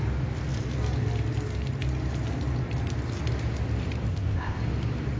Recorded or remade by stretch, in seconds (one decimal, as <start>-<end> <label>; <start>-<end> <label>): 0.0-4.1 recorded; 4.1-4.6 remade; 4.6-5.2 recorded